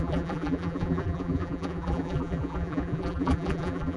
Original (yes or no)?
no